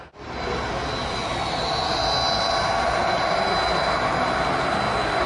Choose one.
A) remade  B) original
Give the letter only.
B